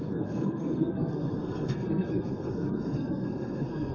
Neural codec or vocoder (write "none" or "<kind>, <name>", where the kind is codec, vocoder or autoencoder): codec, SNAC